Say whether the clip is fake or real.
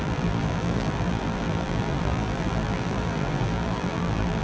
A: fake